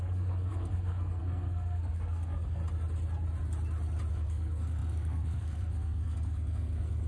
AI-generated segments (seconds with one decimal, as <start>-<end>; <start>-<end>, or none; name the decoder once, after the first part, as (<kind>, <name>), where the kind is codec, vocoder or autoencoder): 0.0-2.6 (codec, SNAC); 4.1-7.1